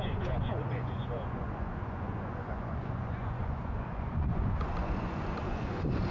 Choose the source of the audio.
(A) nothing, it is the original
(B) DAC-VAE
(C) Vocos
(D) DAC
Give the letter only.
C